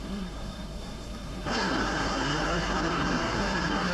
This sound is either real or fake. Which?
fake